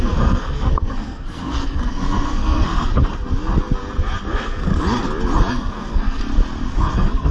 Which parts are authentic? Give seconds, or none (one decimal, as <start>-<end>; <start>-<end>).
2.9-4.3; 4.7-5.5; 6.2-6.7